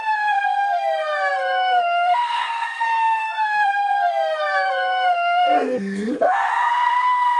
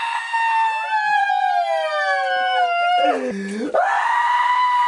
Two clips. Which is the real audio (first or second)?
second